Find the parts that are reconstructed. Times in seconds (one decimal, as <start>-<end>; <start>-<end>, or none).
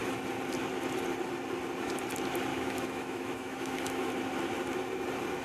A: 2.5-4.1